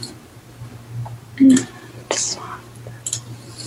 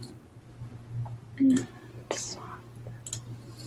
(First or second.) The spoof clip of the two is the first